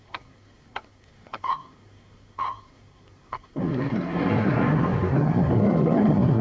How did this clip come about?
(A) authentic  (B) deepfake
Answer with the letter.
B